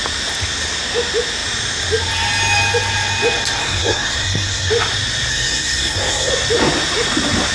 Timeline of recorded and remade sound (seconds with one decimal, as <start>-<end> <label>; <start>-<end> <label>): 0.0-3.6 recorded; 3.6-4.7 remade; 4.7-5.3 recorded; 5.3-6.3 remade; 6.3-7.5 recorded